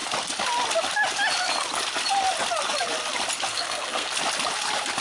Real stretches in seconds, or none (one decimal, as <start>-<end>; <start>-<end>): 0.0-3.5; 4.1-5.0